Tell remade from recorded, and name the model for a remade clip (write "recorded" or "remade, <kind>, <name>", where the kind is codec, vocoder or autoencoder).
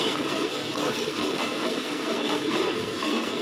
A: remade, codec, SNAC